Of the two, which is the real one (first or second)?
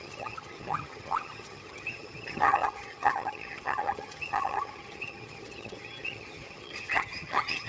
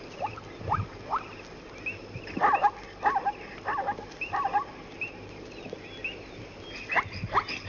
second